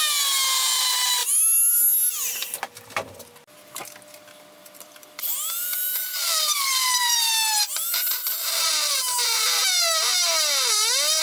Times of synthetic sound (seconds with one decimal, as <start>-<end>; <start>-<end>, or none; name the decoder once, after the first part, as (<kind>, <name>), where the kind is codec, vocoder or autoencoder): 4.6-7.3 (vocoder, BigVGAN v2)